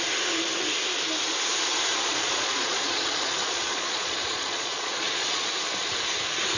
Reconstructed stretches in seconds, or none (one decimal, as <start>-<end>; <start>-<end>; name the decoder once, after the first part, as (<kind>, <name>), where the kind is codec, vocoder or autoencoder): 1.9-5.5 (vocoder, Vocos)